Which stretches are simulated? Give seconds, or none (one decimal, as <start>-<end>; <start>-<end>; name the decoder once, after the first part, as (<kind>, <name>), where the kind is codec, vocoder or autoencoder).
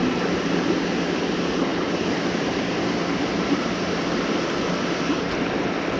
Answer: 3.3-3.8 (vocoder, BigVGAN v2)